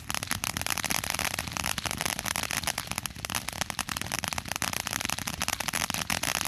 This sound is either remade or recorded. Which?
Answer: recorded